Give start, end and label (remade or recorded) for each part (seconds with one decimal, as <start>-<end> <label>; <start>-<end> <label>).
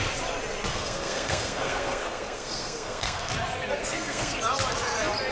0.0-0.7 recorded; 0.7-3.3 remade; 3.3-3.8 recorded; 3.8-4.4 remade; 4.4-5.3 recorded